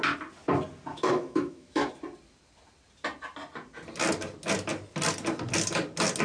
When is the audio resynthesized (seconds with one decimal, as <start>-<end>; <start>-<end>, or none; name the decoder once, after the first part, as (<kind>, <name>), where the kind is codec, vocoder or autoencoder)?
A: 0.9-1.9 (autoencoder, DAC-VAE)